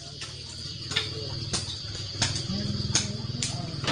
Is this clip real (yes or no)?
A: yes